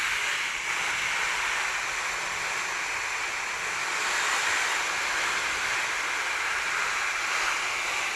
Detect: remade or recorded recorded